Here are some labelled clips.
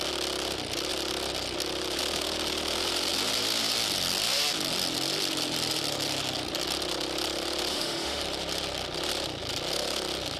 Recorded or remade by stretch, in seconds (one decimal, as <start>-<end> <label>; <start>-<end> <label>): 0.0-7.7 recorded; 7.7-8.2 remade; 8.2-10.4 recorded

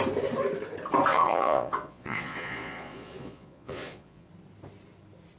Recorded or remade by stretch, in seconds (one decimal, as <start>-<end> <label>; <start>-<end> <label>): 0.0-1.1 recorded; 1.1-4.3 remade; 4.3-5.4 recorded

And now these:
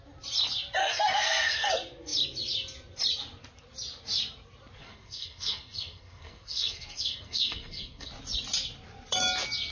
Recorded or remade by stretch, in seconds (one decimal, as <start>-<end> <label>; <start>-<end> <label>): 0.0-0.8 recorded; 0.8-1.7 remade; 1.7-4.8 recorded; 4.8-8.1 remade; 8.1-9.7 recorded

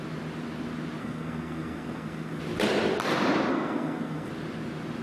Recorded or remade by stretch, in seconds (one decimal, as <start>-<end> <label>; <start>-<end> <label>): 0.0-1.0 recorded; 1.0-2.4 remade; 2.4-3.5 recorded; 3.5-4.3 remade; 4.3-5.0 recorded

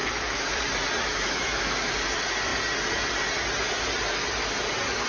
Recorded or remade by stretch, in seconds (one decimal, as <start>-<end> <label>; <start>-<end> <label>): 0.0-0.6 remade; 0.6-1.1 recorded; 1.1-1.9 remade; 1.9-5.1 recorded